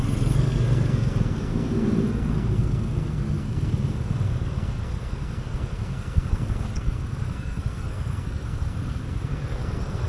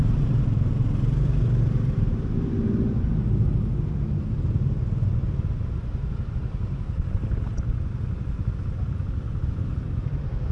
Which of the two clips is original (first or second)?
second